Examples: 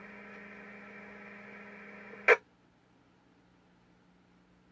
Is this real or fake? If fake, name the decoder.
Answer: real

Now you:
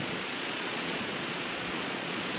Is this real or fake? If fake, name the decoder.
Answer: fake, vocoder, Vocos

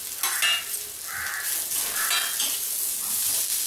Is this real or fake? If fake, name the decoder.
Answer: real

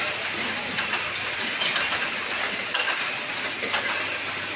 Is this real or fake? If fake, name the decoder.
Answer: real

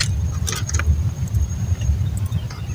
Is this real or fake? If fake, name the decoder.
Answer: real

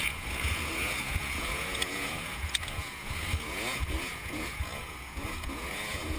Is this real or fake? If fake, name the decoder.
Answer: fake, vocoder, Vocos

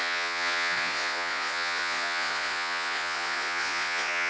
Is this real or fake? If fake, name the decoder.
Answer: fake, vocoder, Vocos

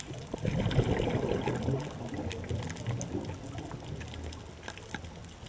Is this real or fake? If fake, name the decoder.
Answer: real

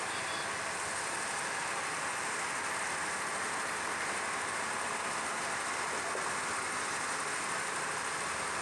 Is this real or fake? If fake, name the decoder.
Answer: real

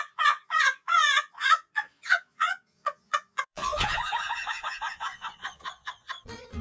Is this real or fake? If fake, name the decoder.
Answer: fake, vocoder, Vocos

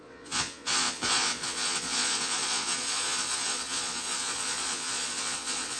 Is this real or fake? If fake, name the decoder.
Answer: fake, vocoder, Vocos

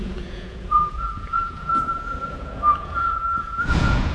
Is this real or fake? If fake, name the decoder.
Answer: fake, vocoder, Vocos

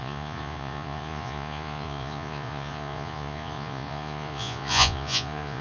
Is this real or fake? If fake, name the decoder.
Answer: fake, vocoder, Vocos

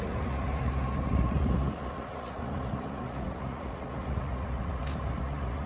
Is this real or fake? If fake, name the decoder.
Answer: fake, vocoder, Vocos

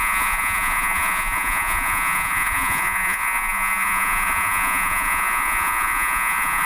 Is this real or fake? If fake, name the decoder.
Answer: fake, vocoder, Vocos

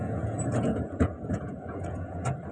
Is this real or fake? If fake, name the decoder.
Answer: fake, vocoder, Vocos